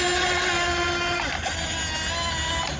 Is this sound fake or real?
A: real